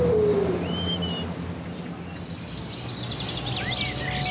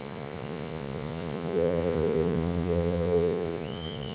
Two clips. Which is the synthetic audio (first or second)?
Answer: second